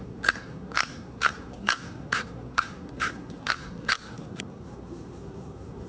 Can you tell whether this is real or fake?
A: fake